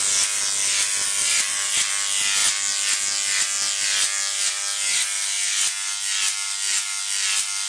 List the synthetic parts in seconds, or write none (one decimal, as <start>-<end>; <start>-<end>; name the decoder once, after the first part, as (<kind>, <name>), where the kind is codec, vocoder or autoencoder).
1.2-1.9 (vocoder, BigVGAN v2)